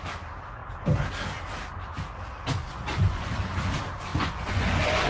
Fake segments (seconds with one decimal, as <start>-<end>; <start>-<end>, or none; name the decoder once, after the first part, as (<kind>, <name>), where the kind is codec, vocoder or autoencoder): 2.6-3.3 (vocoder, Vocos); 4.1-5.1